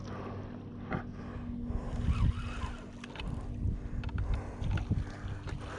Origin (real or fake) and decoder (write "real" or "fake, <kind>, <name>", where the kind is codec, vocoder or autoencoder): real